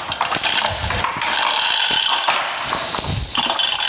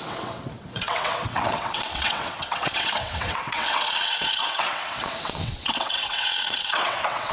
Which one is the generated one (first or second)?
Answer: second